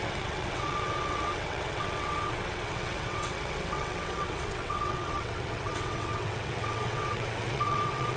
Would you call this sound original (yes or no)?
no